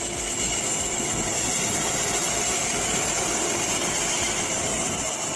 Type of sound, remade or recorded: recorded